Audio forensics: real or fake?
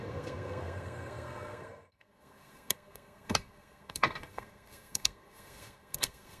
fake